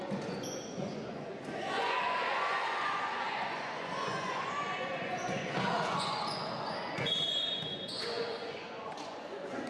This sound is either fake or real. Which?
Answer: fake